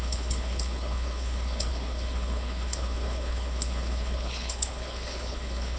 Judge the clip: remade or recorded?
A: remade